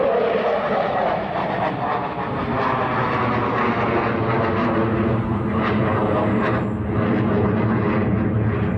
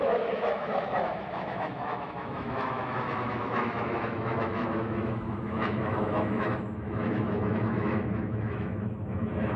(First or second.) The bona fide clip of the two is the first